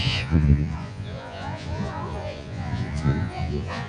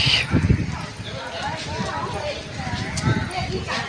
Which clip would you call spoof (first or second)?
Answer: first